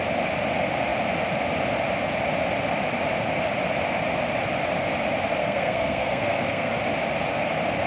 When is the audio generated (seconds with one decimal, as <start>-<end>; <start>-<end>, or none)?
5.4-6.7